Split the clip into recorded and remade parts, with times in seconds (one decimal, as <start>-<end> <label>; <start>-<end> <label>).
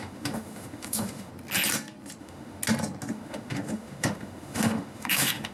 0.0-1.3 remade; 1.3-2.2 recorded; 2.2-2.6 remade; 2.6-3.1 recorded; 3.1-5.5 remade